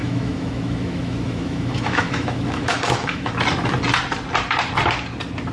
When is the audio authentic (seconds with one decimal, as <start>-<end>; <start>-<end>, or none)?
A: 3.3-5.5